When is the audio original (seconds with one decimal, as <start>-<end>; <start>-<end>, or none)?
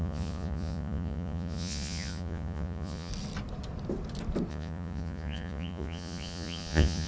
3.1-4.5